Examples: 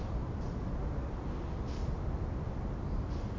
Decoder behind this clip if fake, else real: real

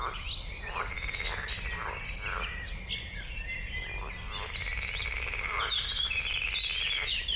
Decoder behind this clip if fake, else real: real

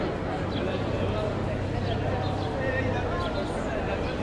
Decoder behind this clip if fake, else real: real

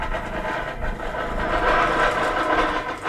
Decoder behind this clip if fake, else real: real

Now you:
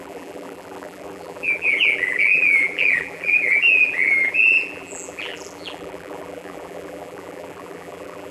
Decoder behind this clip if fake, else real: fake, vocoder, BigVGAN v2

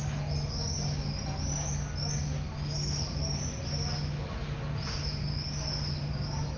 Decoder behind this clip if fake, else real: real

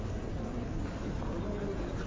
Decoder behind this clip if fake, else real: real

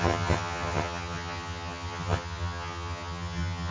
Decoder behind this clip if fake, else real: fake, vocoder, HiFi-GAN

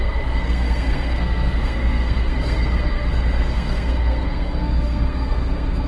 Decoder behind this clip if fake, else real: fake, codec, SNAC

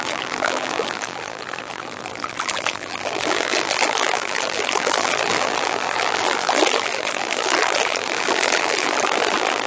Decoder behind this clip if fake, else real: fake, vocoder, BigVGAN v2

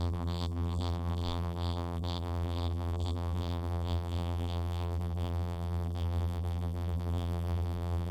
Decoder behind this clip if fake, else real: fake, vocoder, BigVGAN v2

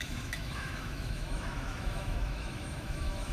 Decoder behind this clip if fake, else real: fake, autoencoder, DAC-VAE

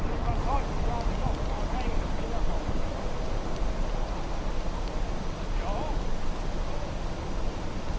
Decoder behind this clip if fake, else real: real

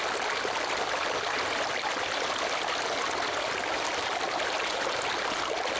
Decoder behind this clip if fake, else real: real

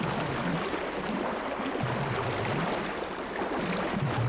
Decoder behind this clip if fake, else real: real